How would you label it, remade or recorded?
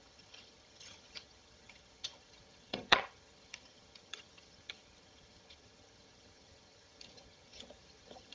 remade